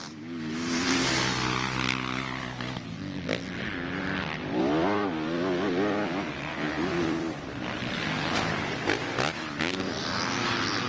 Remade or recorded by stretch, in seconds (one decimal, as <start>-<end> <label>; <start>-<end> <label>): 0.0-7.0 recorded; 7.0-8.6 remade; 8.6-10.9 recorded